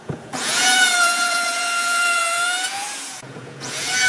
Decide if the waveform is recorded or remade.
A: remade